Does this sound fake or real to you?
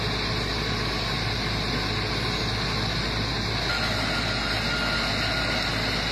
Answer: real